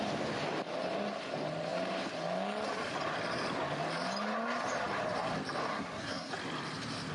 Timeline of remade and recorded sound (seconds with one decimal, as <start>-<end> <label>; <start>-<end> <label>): 0.0-5.7 recorded; 5.7-6.3 remade; 6.3-7.1 recorded